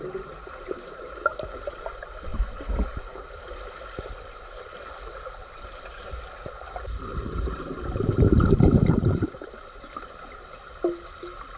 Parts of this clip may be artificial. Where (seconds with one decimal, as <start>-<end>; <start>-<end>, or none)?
5.4-6.2; 7.1-9.3